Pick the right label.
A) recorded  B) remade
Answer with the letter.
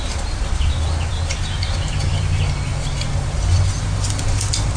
B